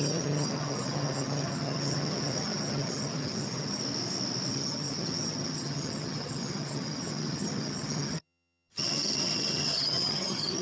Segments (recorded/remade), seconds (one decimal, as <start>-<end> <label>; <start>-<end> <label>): 0.0-3.8 remade; 3.8-4.5 recorded; 4.5-10.6 remade